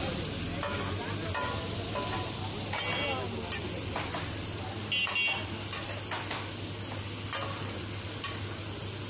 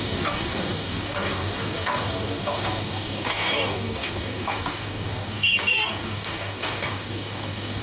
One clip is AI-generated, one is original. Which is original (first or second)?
first